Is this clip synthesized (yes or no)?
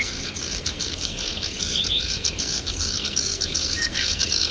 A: yes